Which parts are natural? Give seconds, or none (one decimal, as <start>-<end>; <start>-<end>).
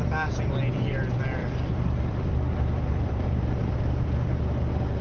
0.0-1.4; 4.4-5.0